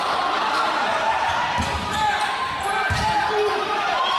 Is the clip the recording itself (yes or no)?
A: no